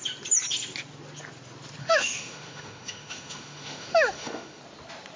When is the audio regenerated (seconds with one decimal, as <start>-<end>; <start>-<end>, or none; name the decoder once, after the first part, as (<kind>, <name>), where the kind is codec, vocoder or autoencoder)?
1.8-4.6 (autoencoder, DAC-VAE)